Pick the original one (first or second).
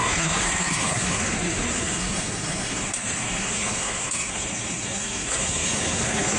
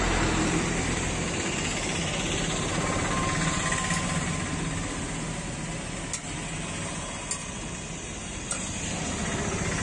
second